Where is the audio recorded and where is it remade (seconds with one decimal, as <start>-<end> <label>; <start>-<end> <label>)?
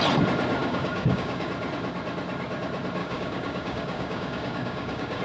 0.0-0.6 recorded; 0.6-1.5 remade; 1.5-3.0 recorded; 3.0-5.2 remade